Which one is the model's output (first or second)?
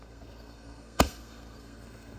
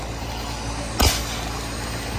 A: first